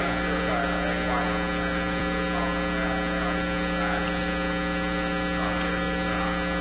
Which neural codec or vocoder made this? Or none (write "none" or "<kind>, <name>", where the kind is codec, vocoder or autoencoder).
none